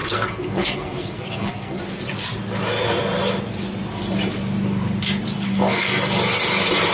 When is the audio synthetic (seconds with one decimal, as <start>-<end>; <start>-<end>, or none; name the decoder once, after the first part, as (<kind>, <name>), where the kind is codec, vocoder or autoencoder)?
0.0-1.8 (codec, SNAC); 5.5-6.0